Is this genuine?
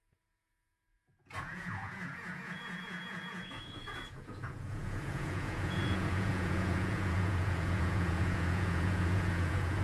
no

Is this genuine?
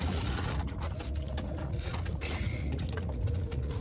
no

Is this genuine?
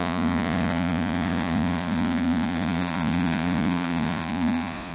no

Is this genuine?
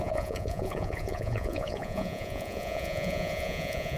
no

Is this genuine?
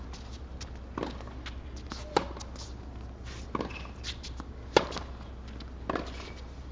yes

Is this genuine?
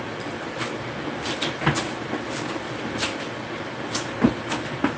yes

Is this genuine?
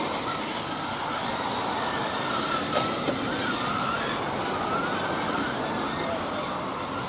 yes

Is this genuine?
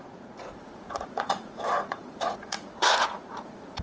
no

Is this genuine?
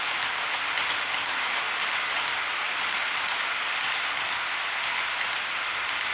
yes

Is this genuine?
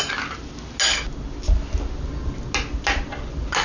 yes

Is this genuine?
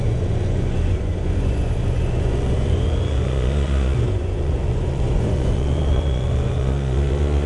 no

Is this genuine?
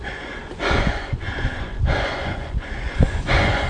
no